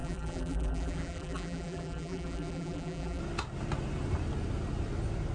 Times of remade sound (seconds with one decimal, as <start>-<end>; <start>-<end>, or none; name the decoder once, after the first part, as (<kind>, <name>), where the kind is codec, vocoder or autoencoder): 0.0-3.2 (vocoder, BigVGAN v2)